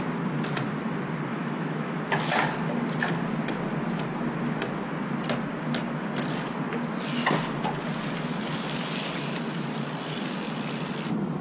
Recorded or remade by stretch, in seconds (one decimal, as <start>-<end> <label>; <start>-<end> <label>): 0.0-1.3 recorded; 1.3-2.0 remade; 2.0-11.4 recorded